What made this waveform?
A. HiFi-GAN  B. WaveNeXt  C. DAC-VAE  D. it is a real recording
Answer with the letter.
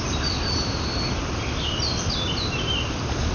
D